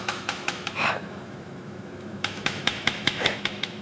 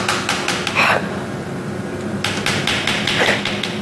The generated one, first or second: first